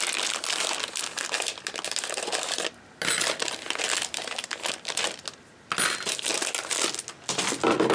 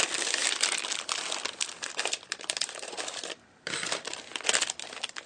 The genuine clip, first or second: first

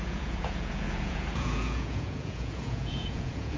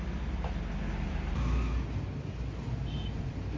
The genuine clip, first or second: second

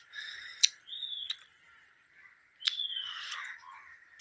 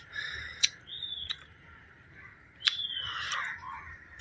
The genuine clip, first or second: first